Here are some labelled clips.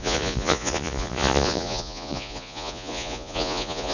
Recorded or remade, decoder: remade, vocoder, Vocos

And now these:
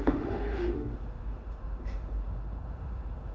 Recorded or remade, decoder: remade, autoencoder, DAC-VAE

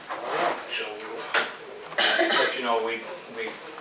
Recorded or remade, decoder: recorded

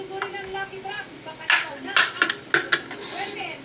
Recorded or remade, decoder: recorded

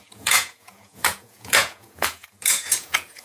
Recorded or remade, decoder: remade, vocoder, Vocos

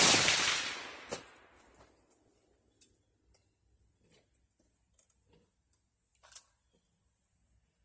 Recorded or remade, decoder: recorded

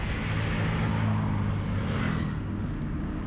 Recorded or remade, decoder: recorded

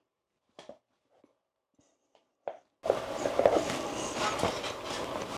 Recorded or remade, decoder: recorded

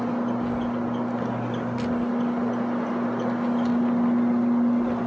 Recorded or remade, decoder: recorded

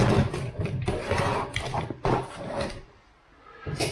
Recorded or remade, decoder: recorded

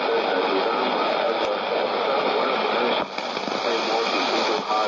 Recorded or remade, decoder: recorded